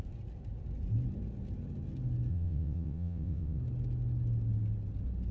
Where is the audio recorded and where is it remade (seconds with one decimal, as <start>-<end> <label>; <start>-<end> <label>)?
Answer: 0.0-2.3 recorded; 2.3-3.6 remade; 3.6-5.3 recorded